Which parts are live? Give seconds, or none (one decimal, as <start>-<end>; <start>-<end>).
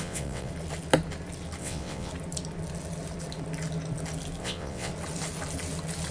0.5-1.6; 2.1-4.4; 4.9-6.1